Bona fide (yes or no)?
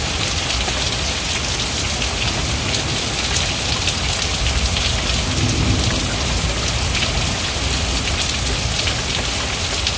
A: yes